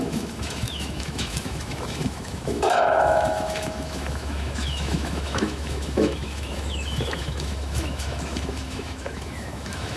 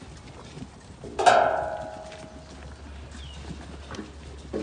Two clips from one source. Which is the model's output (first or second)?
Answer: first